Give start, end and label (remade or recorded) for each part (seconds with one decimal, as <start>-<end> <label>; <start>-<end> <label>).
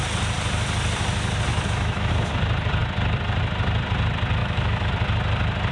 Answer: 0.0-1.5 recorded; 1.5-2.1 remade; 2.1-4.4 recorded; 4.4-4.9 remade; 4.9-5.7 recorded